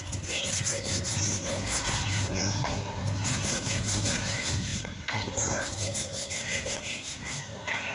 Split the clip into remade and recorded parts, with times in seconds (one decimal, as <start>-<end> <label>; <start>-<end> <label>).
0.0-7.9 remade